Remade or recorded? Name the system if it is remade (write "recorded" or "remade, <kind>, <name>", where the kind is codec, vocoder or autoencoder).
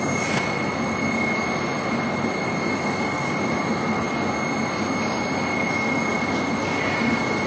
recorded